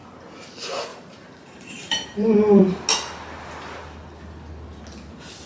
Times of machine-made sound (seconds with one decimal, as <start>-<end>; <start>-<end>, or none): 0.9-2.6